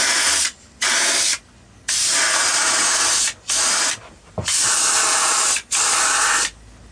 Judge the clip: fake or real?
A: real